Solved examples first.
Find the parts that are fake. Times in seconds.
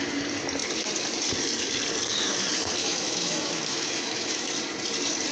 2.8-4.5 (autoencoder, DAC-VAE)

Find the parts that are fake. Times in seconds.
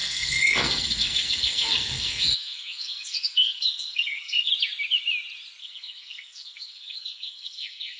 0.0-4.5 (codec, SNAC); 5.6-8.0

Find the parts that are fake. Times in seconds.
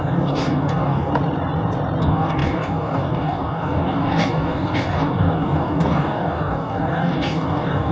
0.0-1.1 (codec, DAC); 2.0-7.9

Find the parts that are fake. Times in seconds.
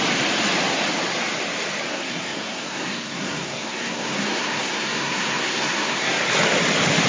1.9-6.2 (codec, SNAC)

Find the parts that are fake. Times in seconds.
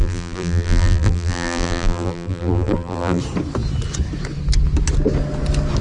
0.0-3.2 (vocoder, BigVGAN v2)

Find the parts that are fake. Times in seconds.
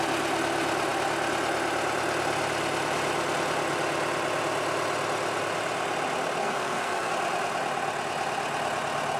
6.4-7.1 (codec, SNAC)